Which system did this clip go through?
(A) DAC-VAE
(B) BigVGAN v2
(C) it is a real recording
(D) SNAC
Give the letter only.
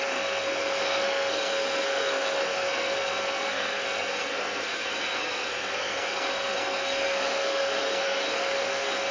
D